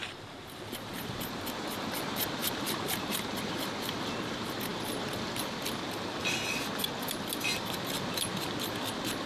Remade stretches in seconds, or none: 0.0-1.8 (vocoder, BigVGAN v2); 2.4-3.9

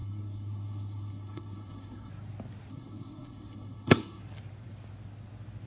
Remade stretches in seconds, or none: 0.0-2.1 (codec, SNAC); 2.7-4.2

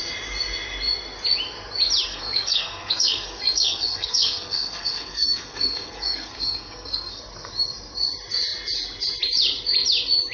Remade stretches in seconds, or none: 2.1-7.2 (codec, SNAC)

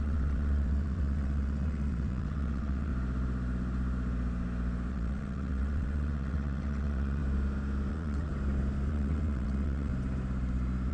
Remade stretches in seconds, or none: 0.0-2.9 (vocoder, WaveNeXt); 4.9-7.2; 7.9-8.3; 8.9-9.9

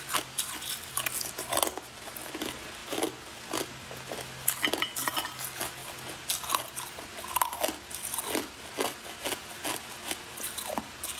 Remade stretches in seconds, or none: none